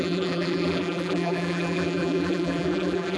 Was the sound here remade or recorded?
remade